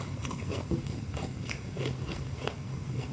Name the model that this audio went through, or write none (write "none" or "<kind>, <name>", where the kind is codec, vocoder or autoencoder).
codec, SNAC